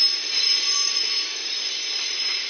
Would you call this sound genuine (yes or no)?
yes